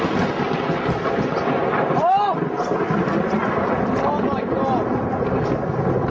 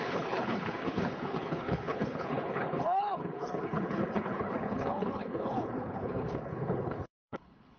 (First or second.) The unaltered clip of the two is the first